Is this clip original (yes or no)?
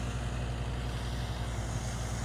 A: yes